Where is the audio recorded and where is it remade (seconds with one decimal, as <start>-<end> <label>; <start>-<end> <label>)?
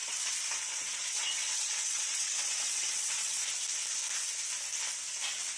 0.0-3.4 remade; 3.4-5.6 recorded